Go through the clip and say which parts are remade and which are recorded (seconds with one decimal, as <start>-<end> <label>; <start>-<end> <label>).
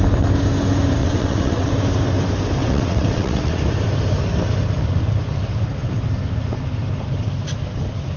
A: 0.0-1.0 recorded; 1.0-1.7 remade; 1.7-2.6 recorded; 2.6-3.6 remade; 3.6-8.2 recorded